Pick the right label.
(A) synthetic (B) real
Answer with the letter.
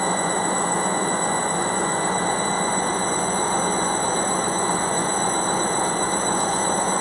A